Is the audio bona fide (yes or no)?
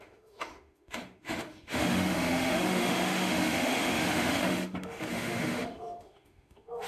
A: no